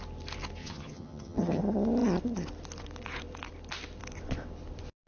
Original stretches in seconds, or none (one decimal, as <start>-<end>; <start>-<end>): 0.0-0.6; 1.6-5.1